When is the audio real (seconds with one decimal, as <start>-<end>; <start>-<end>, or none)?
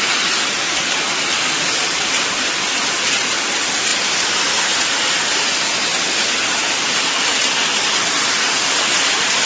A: 3.9-8.0